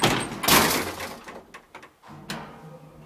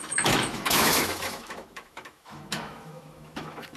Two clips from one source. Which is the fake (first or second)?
second